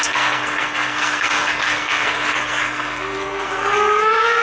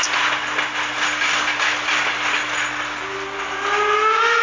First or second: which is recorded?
second